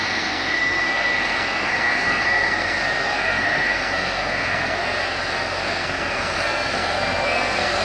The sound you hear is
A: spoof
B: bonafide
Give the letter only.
A